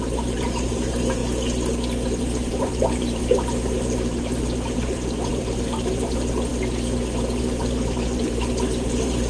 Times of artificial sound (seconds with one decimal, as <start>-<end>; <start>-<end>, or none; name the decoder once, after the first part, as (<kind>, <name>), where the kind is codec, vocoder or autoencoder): 0.0-1.2 (vocoder, BigVGAN v2); 2.2-6.5; 7.4-9.3